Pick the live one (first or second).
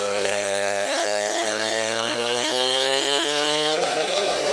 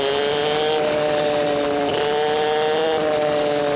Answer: second